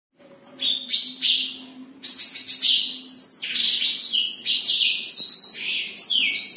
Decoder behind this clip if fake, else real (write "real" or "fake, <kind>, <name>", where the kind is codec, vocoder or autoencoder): real